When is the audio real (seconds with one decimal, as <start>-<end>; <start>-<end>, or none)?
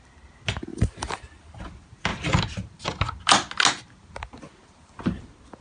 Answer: 0.0-0.7; 1.7-5.6